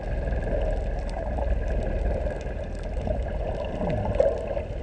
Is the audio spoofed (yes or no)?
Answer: no